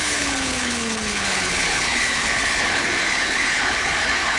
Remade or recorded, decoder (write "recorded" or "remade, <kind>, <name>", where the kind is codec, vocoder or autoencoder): remade, codec, HILCodec